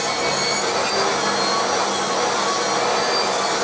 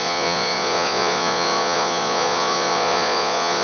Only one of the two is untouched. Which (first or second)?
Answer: first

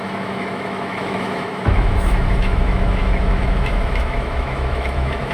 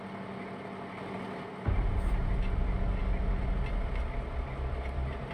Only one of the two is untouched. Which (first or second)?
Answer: second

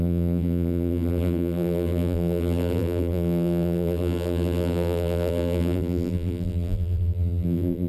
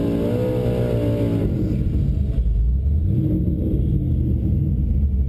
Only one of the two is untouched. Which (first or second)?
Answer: second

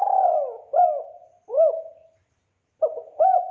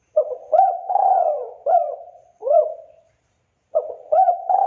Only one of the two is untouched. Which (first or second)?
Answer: first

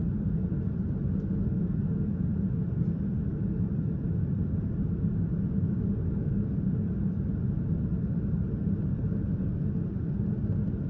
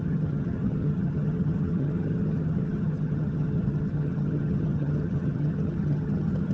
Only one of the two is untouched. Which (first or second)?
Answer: first